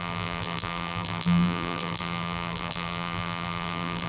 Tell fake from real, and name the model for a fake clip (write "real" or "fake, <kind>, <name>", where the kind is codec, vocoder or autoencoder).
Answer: fake, vocoder, BigVGAN v2